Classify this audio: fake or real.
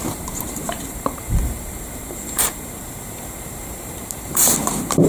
fake